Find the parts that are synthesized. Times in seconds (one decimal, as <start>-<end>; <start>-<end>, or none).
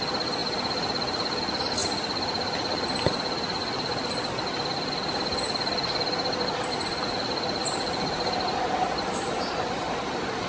none